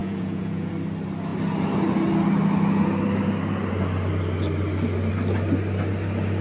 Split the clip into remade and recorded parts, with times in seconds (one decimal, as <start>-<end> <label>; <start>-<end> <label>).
0.0-0.7 remade; 0.7-6.4 recorded

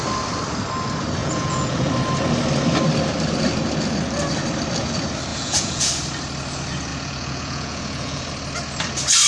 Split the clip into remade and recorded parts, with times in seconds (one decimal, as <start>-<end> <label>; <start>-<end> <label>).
0.0-1.2 recorded; 1.2-1.9 remade; 1.9-5.3 recorded; 5.3-5.9 remade; 5.9-6.9 recorded; 6.9-8.3 remade; 8.3-9.3 recorded

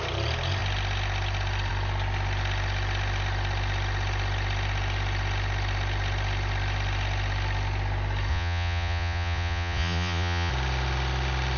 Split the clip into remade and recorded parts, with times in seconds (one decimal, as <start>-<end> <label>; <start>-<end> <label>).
0.0-8.3 recorded; 8.3-10.5 remade; 10.5-11.6 recorded